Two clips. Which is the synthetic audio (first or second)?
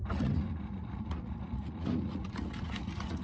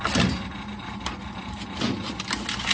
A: first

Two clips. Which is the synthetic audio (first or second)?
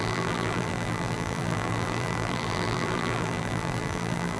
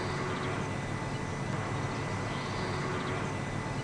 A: first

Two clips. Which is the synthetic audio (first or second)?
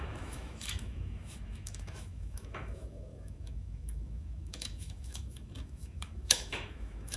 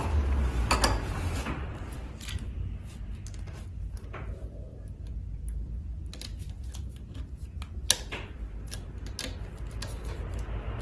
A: first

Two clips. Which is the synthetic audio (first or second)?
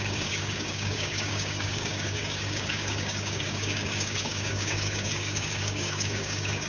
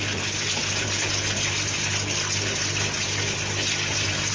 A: first